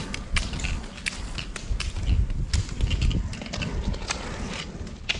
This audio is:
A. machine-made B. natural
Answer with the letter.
B